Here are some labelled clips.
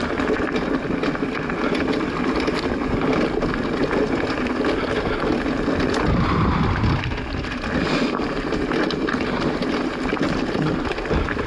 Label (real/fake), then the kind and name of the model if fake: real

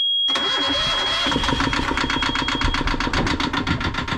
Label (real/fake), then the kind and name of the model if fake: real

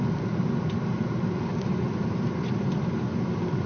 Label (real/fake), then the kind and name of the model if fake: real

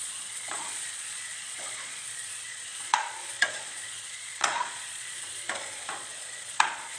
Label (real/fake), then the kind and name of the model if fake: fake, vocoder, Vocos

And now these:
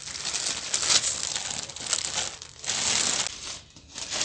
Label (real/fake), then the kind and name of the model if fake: real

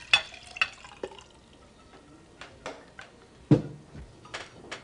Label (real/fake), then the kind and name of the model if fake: real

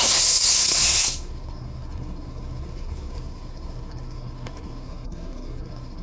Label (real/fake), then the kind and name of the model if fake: fake, codec, SNAC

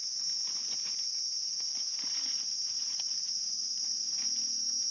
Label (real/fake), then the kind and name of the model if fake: real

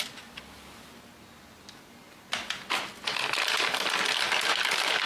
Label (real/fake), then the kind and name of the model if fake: real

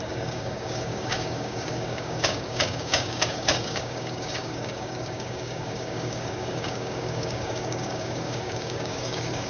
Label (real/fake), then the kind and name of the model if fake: fake, codec, DAC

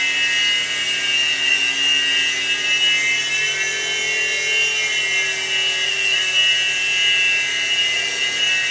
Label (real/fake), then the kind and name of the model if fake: real